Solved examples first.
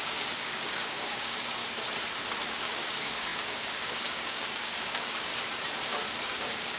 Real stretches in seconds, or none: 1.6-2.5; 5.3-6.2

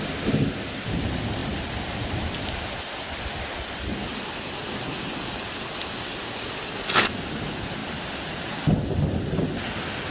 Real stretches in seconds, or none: 0.0-10.1

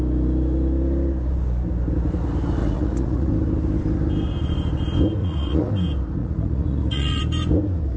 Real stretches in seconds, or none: 0.0-2.6; 3.3-5.2; 5.7-6.2; 7.2-8.0

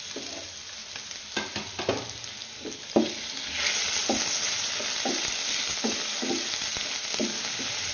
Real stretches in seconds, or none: 0.0-7.9